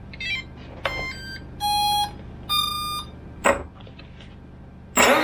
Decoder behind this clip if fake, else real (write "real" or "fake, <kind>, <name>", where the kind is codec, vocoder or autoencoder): real